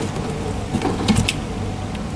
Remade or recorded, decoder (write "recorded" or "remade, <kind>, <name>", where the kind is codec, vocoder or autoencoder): recorded